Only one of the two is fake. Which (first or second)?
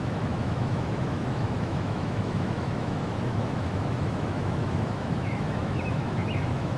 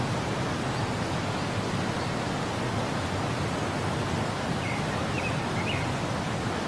first